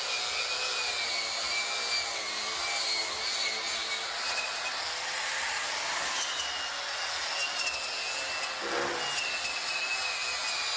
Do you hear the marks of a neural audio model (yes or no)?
no